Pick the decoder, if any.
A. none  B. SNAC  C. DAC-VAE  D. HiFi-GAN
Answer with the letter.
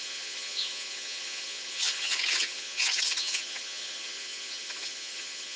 D